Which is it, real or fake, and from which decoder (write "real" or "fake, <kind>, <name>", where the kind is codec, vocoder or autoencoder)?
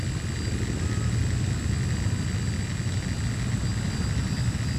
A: real